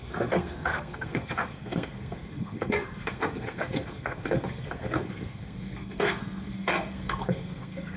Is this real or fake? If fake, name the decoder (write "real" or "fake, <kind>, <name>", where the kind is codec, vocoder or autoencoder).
fake, codec, SNAC